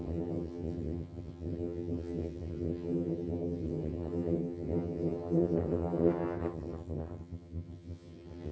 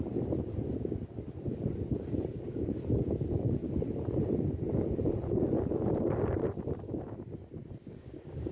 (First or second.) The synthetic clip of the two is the first